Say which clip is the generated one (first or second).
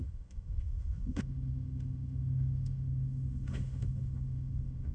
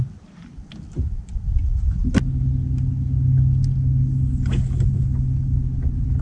first